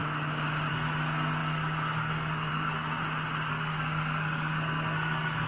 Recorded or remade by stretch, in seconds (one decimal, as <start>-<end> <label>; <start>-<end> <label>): 0.0-0.7 recorded; 0.7-3.0 remade; 3.0-3.5 recorded; 3.5-5.5 remade